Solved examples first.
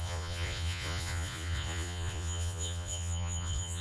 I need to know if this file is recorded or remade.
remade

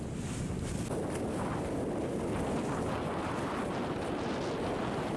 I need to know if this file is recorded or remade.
recorded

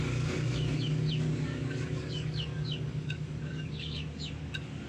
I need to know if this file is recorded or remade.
remade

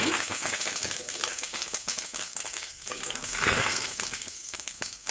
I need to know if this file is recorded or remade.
remade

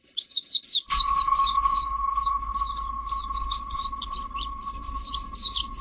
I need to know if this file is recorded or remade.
remade